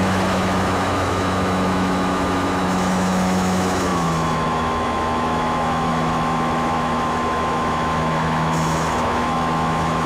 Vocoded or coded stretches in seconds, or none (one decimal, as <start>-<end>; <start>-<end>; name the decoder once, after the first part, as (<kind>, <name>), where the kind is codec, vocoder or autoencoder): 0.0-10.1 (autoencoder, DAC-VAE)

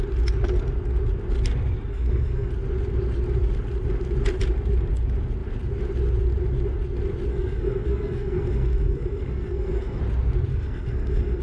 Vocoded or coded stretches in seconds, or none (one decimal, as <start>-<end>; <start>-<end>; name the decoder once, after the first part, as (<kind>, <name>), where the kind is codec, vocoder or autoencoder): 1.9-2.5 (codec, SNAC); 7.3-10.0; 10.5-11.4

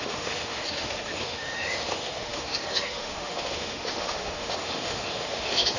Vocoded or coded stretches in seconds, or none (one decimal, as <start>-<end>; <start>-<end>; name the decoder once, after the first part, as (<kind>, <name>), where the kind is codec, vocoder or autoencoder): 0.0-5.8 (autoencoder, DAC-VAE)

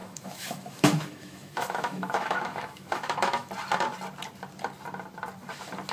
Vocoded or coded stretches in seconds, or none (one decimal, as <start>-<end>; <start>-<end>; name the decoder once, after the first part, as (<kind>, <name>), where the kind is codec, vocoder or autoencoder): 0.0-3.5 (autoencoder, DAC-VAE)

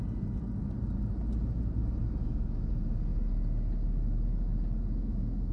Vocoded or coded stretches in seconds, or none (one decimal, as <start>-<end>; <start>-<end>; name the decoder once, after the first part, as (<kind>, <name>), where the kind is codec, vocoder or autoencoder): 2.2-2.7 (autoencoder, DAC-VAE)